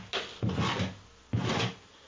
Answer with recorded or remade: recorded